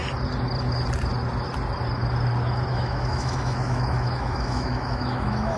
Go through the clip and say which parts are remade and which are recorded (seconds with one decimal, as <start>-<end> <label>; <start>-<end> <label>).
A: 0.0-2.7 recorded; 2.7-5.6 remade